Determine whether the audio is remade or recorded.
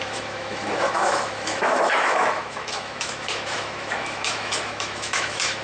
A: remade